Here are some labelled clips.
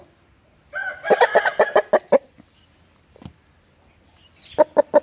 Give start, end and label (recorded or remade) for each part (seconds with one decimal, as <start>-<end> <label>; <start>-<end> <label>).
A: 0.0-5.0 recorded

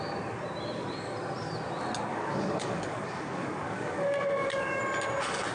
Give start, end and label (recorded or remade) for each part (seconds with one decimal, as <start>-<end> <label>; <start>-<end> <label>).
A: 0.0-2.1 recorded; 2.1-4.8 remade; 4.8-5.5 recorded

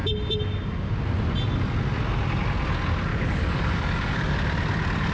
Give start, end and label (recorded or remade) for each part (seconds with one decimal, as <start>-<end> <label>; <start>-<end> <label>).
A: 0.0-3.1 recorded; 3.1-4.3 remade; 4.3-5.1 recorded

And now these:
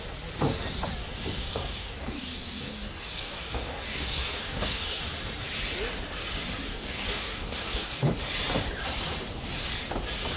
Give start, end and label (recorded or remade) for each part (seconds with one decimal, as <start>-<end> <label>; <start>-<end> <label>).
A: 0.0-1.4 recorded; 1.4-5.0 remade; 5.0-6.7 recorded; 6.7-8.2 remade; 8.2-10.4 recorded

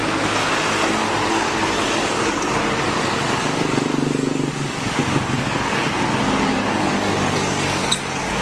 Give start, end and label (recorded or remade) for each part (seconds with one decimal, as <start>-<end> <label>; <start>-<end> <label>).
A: 0.0-1.3 recorded; 1.3-8.4 remade